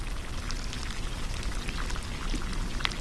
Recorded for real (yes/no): yes